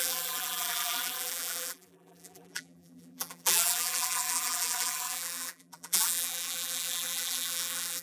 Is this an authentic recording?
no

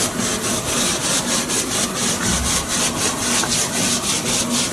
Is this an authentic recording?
yes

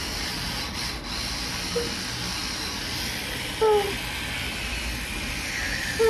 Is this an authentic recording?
yes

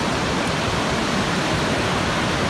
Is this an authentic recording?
yes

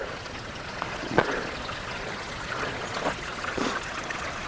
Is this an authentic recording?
no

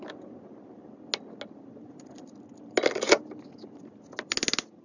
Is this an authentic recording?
yes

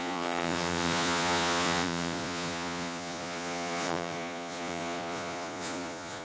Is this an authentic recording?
no